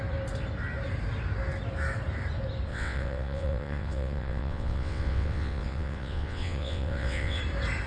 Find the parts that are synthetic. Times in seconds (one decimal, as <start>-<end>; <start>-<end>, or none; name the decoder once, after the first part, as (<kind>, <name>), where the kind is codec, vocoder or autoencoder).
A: 2.7-7.4 (vocoder, WaveNeXt)